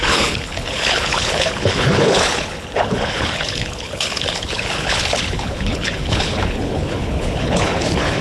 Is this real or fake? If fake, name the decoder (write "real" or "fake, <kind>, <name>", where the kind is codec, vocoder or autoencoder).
fake, codec, HILCodec